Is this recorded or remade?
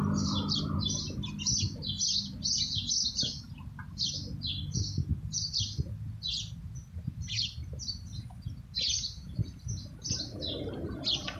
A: recorded